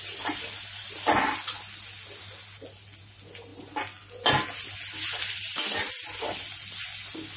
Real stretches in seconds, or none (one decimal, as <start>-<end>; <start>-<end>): 0.0-7.4